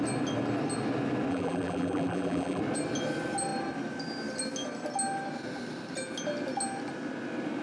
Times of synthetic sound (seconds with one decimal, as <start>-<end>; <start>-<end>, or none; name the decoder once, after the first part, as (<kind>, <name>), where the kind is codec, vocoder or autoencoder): 1.3-2.6 (vocoder, BigVGAN v2)